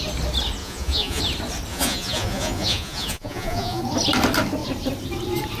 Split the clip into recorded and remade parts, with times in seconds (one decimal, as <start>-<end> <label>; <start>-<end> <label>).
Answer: 0.0-0.6 recorded; 0.6-1.2 remade; 1.2-1.7 recorded; 1.7-3.8 remade; 3.8-5.6 recorded